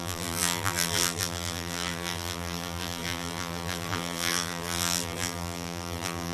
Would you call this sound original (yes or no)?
no